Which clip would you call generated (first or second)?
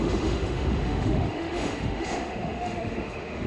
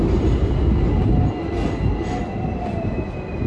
first